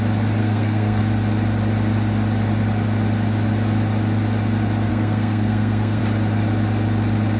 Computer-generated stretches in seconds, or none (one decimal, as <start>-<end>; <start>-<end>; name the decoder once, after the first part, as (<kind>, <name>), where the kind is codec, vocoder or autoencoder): 0.4-1.0 (codec, SNAC); 4.9-6.0